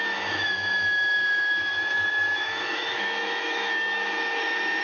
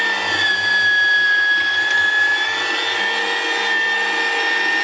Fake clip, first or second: first